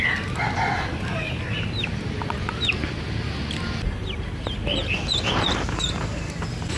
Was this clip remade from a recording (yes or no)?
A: no